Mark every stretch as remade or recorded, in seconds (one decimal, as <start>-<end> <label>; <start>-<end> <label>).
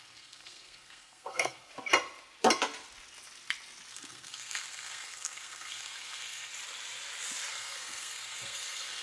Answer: 0.0-1.7 remade; 1.7-3.9 recorded; 3.9-6.5 remade; 6.5-7.5 recorded; 7.5-9.0 remade